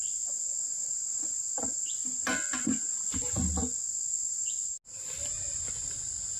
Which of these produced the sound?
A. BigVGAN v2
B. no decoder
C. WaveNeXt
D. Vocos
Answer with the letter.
B